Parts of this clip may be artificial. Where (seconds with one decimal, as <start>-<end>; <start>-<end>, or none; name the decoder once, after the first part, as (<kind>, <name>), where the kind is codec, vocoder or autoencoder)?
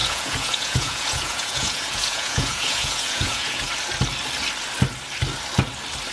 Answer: 0.0-3.7 (vocoder, Vocos)